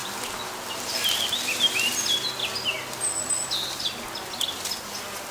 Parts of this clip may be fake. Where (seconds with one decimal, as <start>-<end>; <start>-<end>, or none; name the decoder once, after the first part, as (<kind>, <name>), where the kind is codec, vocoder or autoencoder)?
0.0-3.0 (vocoder, BigVGAN v2)